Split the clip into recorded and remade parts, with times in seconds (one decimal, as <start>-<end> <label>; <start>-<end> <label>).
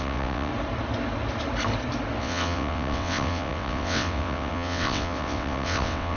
0.0-0.5 remade; 0.5-2.2 recorded; 2.2-6.2 remade